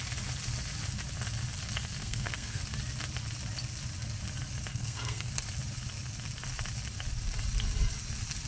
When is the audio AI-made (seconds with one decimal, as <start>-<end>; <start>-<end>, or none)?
2.0-2.6; 4.7-5.3